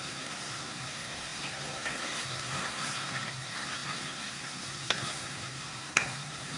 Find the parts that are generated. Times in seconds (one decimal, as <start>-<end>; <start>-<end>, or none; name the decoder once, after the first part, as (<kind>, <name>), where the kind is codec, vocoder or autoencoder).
0.0-6.6 (codec, SNAC)